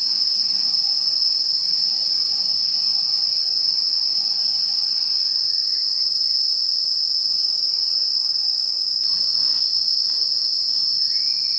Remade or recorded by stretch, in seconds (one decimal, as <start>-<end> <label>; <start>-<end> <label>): 0.0-11.6 recorded